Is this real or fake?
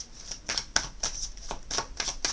real